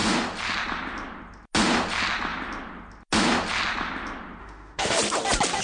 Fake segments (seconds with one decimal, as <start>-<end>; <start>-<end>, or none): 4.4-5.0